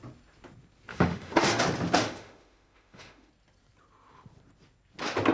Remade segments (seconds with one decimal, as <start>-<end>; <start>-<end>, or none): 0.9-1.6; 2.0-3.3

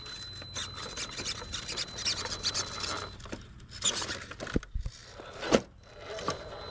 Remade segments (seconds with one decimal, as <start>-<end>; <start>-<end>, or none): 5.0-5.5

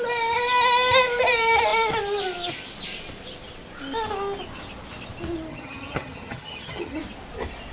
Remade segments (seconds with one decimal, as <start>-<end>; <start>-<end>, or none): 5.5-7.0

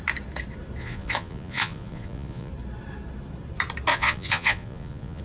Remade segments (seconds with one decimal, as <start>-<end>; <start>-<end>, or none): 0.8-2.5; 3.9-5.2